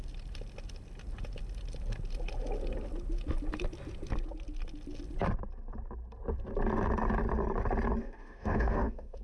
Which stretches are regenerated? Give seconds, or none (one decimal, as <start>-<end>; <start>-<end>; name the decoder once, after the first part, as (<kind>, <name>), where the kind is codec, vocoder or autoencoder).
8.0-9.2 (autoencoder, DAC-VAE)